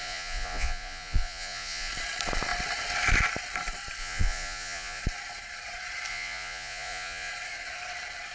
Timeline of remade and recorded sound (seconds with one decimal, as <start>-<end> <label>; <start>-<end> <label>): 0.0-1.9 remade; 1.9-4.0 recorded; 4.0-5.0 remade; 5.0-6.1 recorded; 6.1-7.3 remade; 7.3-8.3 recorded